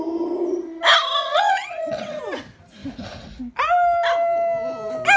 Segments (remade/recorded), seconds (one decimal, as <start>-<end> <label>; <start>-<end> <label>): 0.0-1.2 recorded; 1.2-2.2 remade; 2.2-5.2 recorded